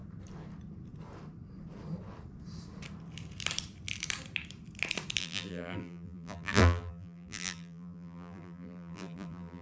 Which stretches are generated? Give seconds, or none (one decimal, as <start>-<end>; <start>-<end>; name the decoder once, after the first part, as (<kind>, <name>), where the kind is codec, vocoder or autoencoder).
5.2-9.6 (vocoder, BigVGAN v2)